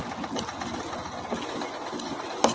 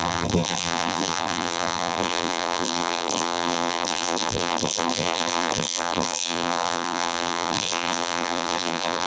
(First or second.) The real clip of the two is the first